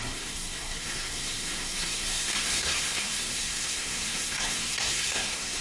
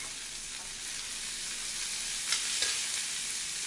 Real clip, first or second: second